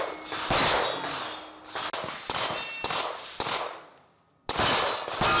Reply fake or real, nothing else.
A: real